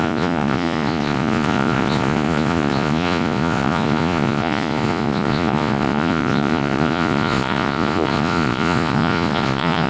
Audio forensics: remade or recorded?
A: remade